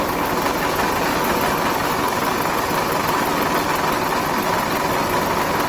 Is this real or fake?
real